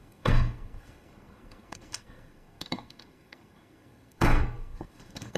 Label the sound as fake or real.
fake